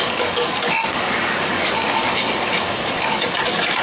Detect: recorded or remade remade